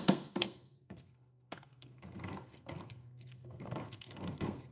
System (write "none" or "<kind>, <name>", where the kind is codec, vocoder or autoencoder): codec, SNAC